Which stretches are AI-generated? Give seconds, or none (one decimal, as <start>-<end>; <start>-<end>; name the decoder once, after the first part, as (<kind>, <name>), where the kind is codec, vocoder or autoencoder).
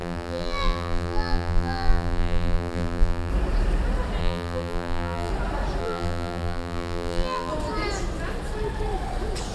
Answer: 0.0-3.3 (vocoder, BigVGAN v2); 4.2-5.3; 5.8-7.5